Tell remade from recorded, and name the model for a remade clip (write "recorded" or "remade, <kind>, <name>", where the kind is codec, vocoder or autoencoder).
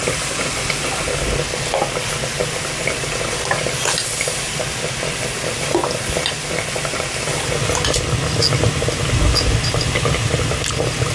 recorded